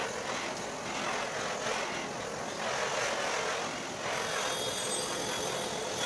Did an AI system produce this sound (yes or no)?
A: no